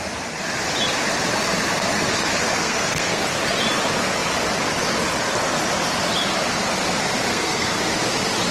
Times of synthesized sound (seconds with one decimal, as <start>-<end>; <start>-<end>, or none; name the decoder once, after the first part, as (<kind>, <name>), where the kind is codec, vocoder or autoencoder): 2.6-3.2 (codec, SNAC); 7.3-7.8